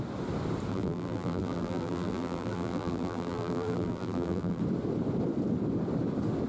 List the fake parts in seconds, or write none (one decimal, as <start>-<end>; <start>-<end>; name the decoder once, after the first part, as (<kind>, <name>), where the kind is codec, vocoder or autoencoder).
0.7-4.6 (vocoder, BigVGAN v2)